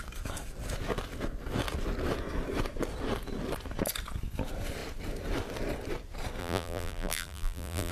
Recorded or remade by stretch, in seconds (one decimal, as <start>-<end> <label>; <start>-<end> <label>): 0.0-6.4 recorded; 6.4-7.9 remade